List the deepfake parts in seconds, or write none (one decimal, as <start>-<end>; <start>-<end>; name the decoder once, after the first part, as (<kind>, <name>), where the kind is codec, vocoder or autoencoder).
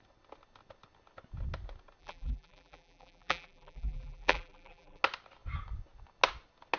2.0-5.0 (vocoder, BigVGAN v2)